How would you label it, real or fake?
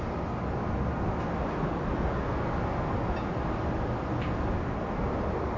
real